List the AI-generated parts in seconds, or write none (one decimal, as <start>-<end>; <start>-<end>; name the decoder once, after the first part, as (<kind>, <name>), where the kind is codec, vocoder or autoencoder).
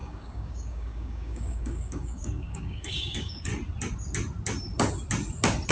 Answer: 0.0-3.5 (codec, DAC)